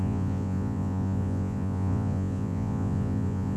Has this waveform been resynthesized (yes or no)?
yes